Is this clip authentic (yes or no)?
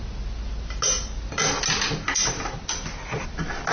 yes